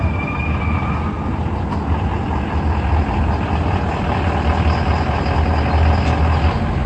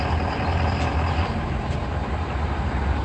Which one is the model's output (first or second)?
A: second